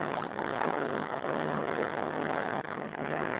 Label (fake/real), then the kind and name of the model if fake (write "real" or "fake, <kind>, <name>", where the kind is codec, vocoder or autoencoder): fake, vocoder, HiFi-GAN